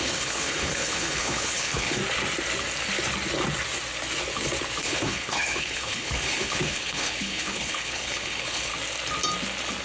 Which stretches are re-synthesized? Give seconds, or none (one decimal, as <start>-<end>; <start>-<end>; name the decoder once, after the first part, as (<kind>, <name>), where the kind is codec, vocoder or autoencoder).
0.0-2.0 (codec, HILCodec); 4.8-8.7